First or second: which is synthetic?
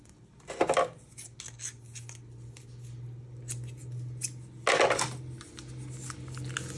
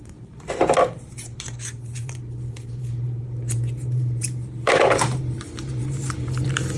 second